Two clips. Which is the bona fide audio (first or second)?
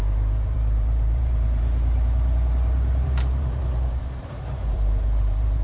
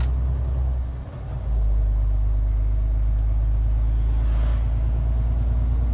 second